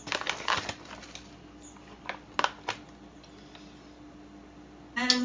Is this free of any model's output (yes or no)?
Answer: yes